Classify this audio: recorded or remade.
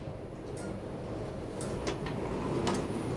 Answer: recorded